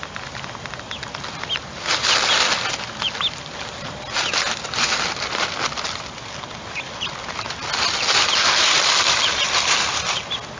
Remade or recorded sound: recorded